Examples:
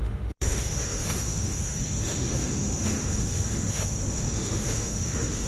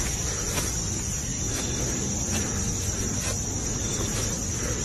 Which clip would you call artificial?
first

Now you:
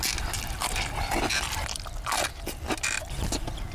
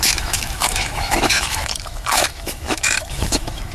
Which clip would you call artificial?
second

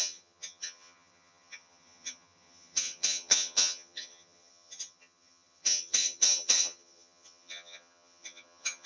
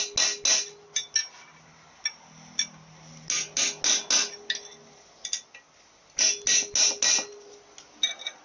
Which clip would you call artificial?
first